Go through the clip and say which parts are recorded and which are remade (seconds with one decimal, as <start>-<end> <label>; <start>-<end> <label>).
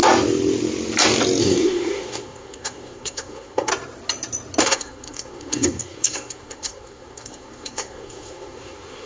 0.0-1.4 recorded; 1.4-3.7 remade; 3.7-4.6 recorded; 4.6-9.1 remade